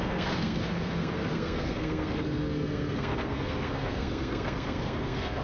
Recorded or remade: remade